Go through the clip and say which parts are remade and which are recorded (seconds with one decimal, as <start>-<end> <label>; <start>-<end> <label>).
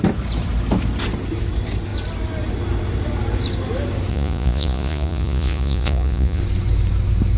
0.0-4.1 recorded; 4.1-6.4 remade; 6.4-7.4 recorded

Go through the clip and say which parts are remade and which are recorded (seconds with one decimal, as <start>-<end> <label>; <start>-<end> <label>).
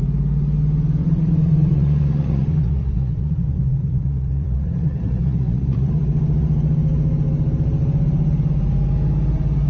0.0-1.0 recorded; 1.0-5.9 remade; 5.9-9.7 recorded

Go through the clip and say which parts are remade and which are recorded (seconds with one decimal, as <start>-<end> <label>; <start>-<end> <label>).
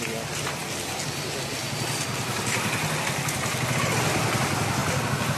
0.0-5.4 recorded